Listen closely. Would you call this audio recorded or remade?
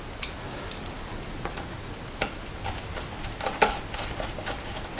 recorded